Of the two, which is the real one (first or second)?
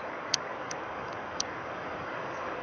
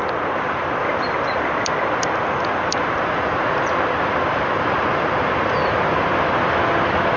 second